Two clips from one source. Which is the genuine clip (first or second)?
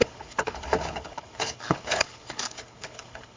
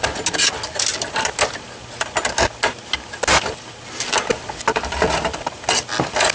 second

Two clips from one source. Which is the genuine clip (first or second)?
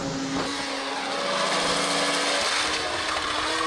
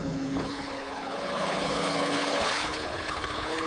first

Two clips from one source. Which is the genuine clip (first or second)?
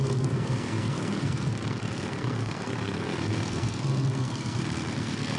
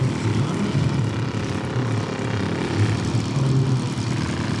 second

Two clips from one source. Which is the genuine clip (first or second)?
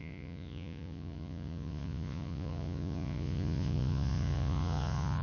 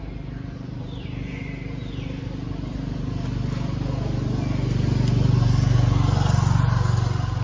second